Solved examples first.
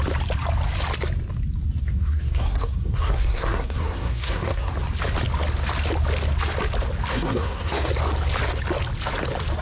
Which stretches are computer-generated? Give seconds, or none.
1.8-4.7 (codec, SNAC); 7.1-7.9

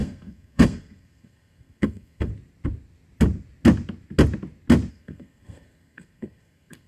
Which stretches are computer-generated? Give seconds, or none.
0.0-2.3 (codec, SNAC); 4.9-6.9